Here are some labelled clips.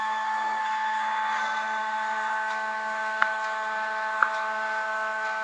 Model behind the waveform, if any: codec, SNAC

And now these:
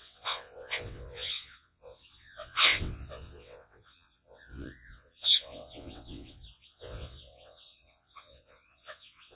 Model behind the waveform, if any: vocoder, WaveNeXt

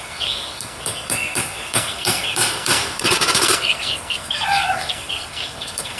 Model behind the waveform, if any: codec, SNAC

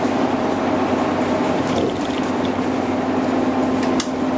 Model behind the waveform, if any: none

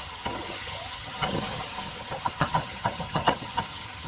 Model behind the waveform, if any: vocoder, HiFi-GAN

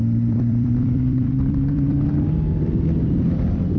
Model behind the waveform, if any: vocoder, BigVGAN v2